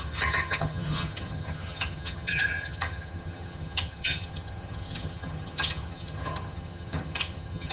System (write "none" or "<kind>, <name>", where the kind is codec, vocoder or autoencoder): vocoder, HiFi-GAN